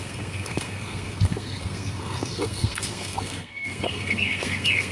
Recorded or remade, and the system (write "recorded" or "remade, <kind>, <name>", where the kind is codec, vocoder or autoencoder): remade, codec, SNAC